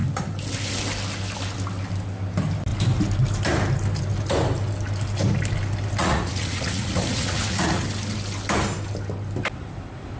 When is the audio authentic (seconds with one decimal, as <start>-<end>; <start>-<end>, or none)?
0.0-6.0; 7.8-10.2